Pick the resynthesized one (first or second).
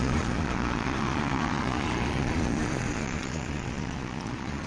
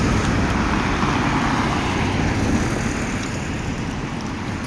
first